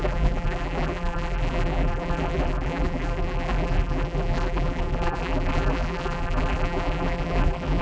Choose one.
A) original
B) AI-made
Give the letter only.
B